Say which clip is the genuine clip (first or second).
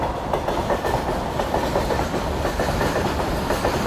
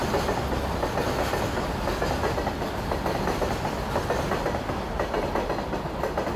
second